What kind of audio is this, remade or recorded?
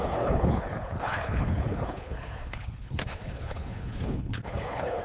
remade